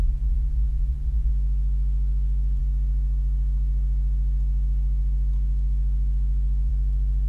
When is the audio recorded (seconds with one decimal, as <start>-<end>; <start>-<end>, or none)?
1.3-7.3